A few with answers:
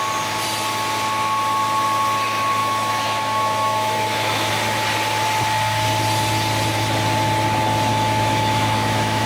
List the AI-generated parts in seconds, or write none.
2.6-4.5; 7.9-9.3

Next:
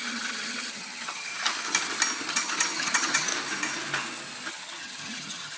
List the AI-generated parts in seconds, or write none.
0.0-1.3; 2.3-3.3; 4.5-5.6

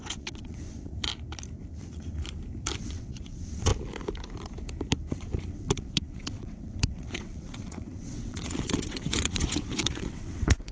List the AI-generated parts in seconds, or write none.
0.0-1.1; 1.8-2.2; 2.8-3.7; 5.1-10.7

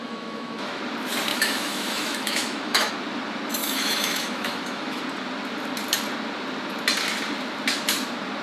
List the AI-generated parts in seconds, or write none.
0.0-0.8; 1.3-2.9; 3.6-5.0

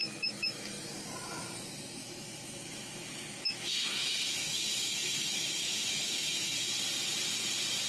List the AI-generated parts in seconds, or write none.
0.0-0.7; 2.0-6.7